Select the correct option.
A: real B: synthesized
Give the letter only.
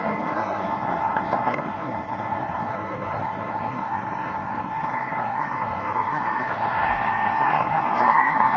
B